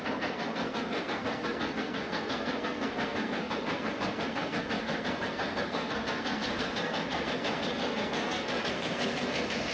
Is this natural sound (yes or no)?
no